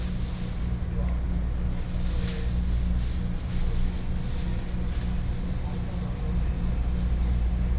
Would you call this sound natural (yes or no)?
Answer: yes